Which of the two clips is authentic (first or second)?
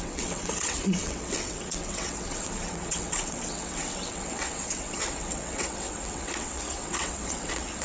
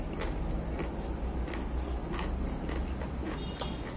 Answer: second